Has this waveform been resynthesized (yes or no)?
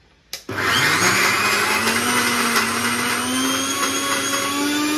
no